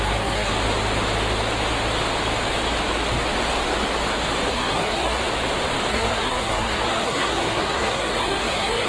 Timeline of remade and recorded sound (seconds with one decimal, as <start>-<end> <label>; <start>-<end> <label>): 0.0-0.5 remade; 0.5-4.5 recorded; 4.5-5.2 remade; 5.2-5.9 recorded; 5.9-8.9 remade